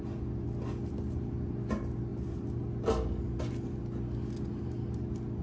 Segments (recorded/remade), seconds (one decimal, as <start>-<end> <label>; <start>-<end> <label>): 0.0-5.4 recorded